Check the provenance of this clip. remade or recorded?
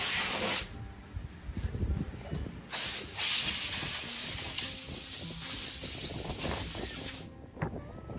recorded